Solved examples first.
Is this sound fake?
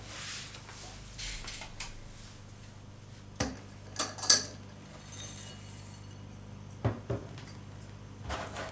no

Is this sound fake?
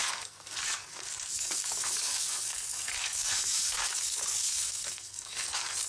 yes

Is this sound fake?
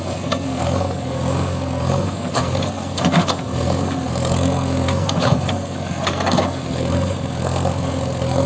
yes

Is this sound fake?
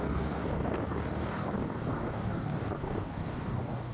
yes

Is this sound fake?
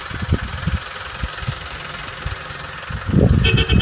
no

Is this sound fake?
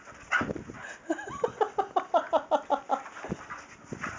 no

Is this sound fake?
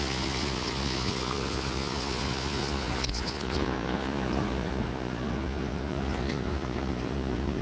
yes